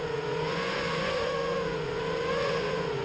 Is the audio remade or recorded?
remade